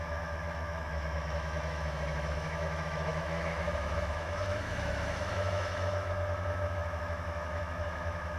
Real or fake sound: fake